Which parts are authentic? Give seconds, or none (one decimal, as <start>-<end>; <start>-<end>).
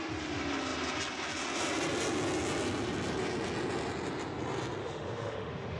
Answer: 0.0-4.8